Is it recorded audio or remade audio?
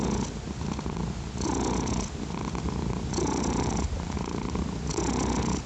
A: recorded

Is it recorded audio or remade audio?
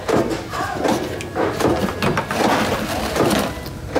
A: recorded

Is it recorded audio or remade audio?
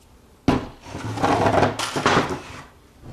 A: recorded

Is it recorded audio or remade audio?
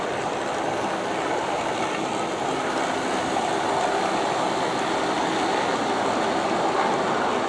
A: recorded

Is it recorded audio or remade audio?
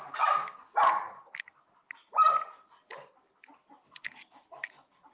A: recorded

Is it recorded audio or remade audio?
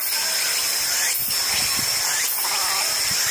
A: recorded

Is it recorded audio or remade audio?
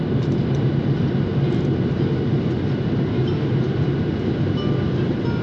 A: recorded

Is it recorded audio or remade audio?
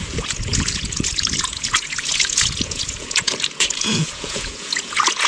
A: remade